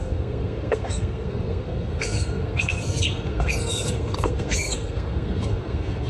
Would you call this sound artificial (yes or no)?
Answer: yes